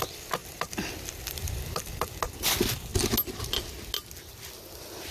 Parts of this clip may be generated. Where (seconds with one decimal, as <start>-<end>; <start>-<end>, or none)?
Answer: 0.0-2.9; 4.2-5.1